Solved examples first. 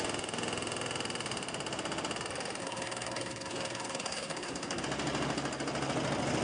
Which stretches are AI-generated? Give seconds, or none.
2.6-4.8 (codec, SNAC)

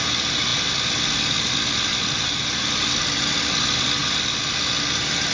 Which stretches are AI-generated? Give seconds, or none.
none

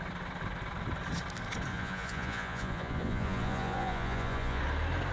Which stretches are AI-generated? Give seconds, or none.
1.7-4.6 (vocoder, Vocos)

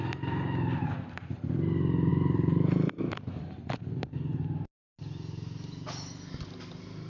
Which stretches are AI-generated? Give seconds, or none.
none

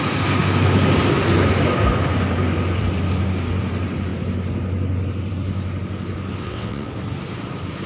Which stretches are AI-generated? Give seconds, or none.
6.4-6.9 (vocoder, WaveNeXt)